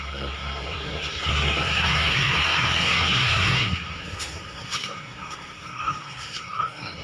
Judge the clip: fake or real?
fake